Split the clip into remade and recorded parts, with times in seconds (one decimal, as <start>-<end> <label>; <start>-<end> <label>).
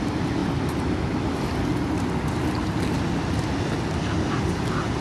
0.0-5.0 recorded